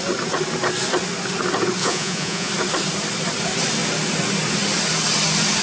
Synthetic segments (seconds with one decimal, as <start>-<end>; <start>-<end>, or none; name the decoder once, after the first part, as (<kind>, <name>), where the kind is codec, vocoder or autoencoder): 1.8-2.5 (vocoder, Vocos)